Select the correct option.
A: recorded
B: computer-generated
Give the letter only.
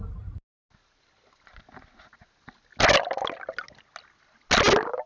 A